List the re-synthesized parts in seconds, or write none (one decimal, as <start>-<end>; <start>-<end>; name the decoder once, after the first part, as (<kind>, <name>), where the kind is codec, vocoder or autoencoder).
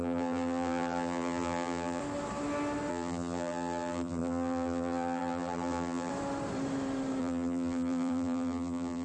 0.0-2.0 (vocoder, BigVGAN v2); 2.9-6.1; 7.2-9.0